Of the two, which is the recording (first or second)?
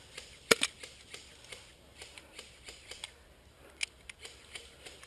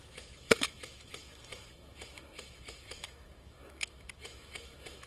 first